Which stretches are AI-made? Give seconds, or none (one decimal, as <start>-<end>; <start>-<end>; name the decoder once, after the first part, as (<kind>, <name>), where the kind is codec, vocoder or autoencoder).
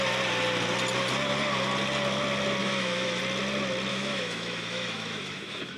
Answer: 2.6-3.2 (autoencoder, DAC-VAE); 3.9-5.8